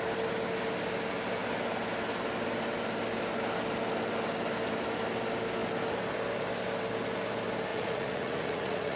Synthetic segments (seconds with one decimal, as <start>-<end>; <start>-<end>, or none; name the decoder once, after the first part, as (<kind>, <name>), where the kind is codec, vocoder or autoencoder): 7.7-9.0 (vocoder, Vocos)